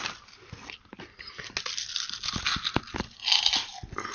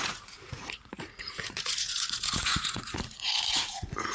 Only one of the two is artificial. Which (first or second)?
second